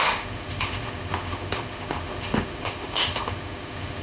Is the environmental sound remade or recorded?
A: remade